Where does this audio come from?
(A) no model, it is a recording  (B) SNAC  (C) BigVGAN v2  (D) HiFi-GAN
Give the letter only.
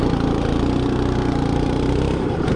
C